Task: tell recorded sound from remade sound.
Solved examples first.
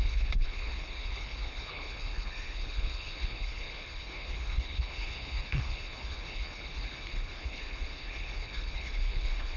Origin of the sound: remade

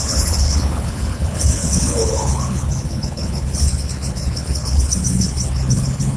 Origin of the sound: remade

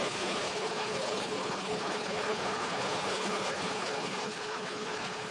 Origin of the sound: remade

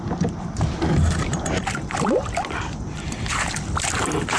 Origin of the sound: recorded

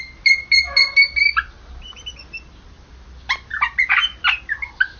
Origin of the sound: recorded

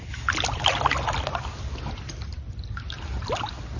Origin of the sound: recorded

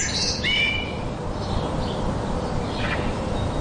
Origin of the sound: recorded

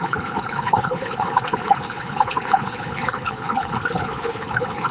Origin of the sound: remade